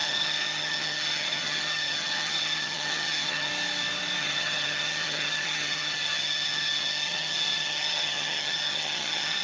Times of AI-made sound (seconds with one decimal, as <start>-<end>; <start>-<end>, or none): 0.0-3.5; 4.2-9.4